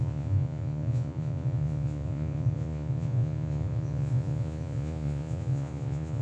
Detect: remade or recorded remade